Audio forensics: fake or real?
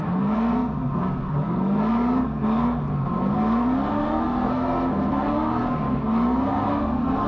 fake